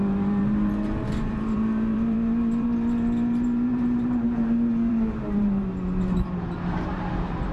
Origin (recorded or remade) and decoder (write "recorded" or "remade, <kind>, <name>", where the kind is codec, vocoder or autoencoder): remade, vocoder, BigVGAN v2